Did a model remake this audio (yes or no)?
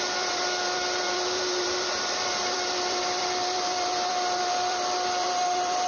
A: yes